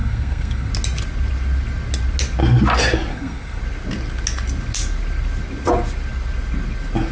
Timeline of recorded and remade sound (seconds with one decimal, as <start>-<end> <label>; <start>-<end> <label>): 0.0-0.7 remade; 0.7-3.1 recorded; 3.1-3.6 remade; 3.6-7.1 recorded